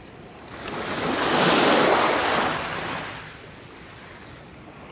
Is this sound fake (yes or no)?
no